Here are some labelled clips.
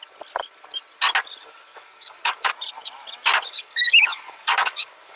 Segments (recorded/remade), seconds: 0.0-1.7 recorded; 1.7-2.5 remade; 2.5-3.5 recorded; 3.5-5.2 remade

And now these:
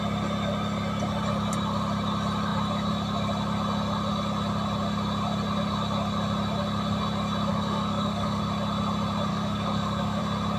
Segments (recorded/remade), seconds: 0.0-7.5 recorded; 7.5-8.4 remade; 8.4-9.3 recorded; 9.3-10.2 remade; 10.2-10.6 recorded

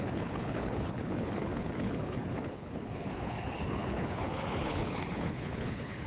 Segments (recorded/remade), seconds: 0.0-6.1 remade